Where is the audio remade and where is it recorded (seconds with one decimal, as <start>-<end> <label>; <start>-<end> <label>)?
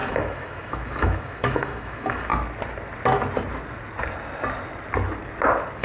0.0-2.3 remade; 2.3-5.8 recorded